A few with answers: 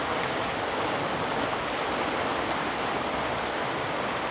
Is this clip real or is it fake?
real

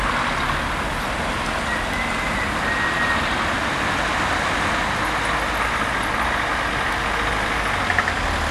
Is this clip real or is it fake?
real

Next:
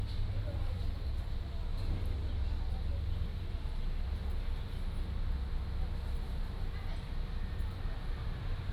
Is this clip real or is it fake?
real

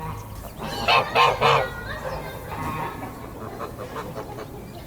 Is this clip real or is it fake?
real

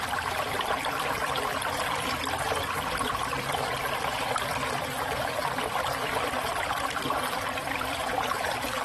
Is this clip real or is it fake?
fake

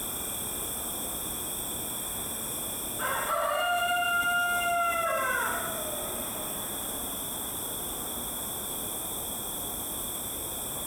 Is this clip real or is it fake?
real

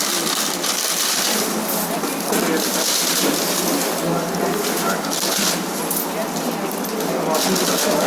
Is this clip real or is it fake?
real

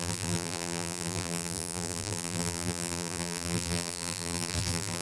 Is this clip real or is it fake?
fake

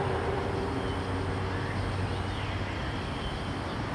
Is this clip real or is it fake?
real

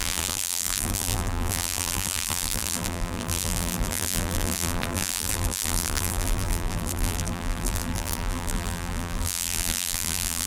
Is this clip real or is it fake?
fake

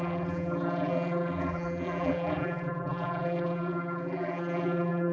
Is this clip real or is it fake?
fake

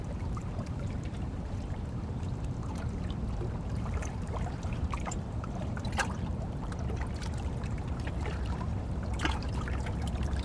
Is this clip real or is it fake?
fake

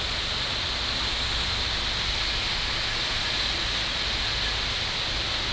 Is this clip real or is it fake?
real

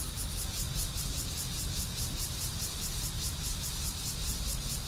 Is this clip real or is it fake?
fake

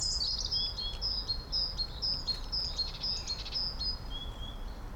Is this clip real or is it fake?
real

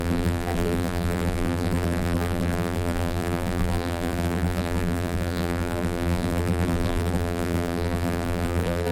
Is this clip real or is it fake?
fake